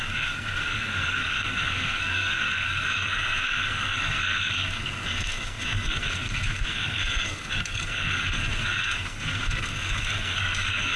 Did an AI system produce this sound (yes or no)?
yes